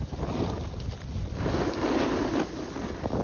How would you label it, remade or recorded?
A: recorded